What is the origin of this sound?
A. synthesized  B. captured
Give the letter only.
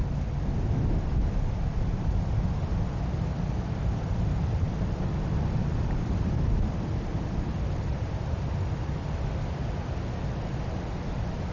B